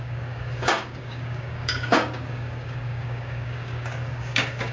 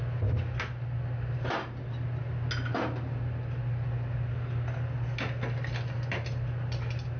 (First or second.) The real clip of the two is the second